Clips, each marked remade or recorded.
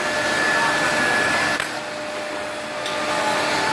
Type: recorded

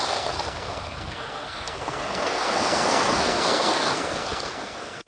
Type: remade